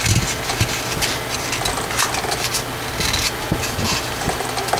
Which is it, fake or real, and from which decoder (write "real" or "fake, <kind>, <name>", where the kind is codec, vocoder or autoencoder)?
real